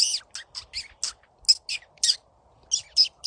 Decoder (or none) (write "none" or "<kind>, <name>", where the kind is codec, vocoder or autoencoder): none